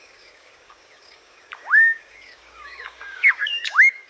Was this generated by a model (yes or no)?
yes